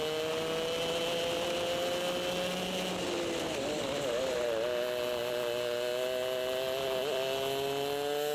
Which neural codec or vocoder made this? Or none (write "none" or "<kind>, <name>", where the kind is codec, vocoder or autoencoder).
none